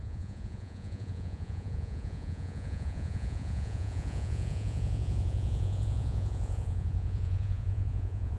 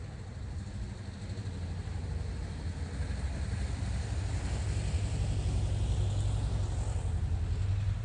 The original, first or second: second